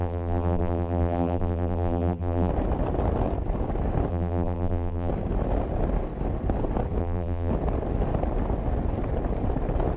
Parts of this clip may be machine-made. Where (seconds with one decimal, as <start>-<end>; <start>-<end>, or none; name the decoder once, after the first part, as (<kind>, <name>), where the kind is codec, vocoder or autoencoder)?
0.0-2.5 (vocoder, BigVGAN v2); 4.1-5.1; 7.0-7.5